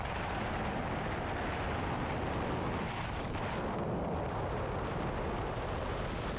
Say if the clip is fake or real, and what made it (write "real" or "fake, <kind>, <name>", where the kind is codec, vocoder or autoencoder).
real